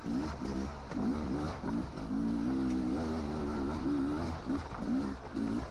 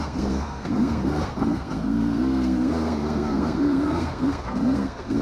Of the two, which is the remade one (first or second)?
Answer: second